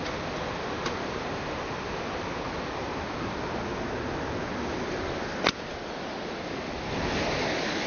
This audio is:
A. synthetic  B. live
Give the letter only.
B